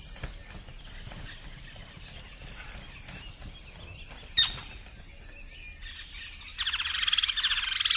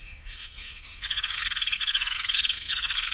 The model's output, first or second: second